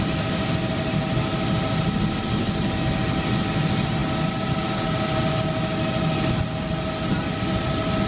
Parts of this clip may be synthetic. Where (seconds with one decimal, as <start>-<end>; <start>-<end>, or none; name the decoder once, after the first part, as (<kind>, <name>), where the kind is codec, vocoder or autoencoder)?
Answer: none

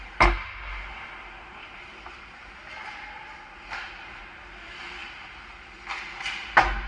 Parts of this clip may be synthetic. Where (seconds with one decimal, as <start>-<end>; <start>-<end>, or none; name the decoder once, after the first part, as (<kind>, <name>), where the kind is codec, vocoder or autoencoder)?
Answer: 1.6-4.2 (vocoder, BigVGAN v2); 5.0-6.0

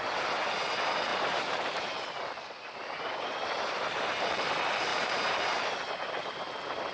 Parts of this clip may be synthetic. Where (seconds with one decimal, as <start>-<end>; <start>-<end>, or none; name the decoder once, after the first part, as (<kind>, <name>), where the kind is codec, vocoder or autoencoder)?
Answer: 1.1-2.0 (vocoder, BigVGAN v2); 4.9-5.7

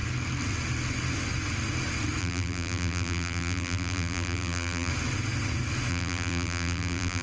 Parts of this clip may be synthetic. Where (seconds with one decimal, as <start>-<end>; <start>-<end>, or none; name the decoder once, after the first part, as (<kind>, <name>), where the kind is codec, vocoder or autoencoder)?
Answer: 2.2-4.9 (vocoder, BigVGAN v2); 5.9-7.2